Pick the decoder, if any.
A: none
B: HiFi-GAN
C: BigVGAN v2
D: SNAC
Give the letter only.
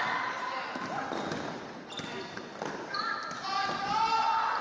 A